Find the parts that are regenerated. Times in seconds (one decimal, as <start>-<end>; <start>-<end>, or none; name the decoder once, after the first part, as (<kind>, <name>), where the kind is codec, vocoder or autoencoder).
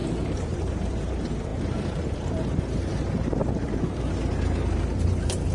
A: 0.0-5.5 (vocoder, BigVGAN v2)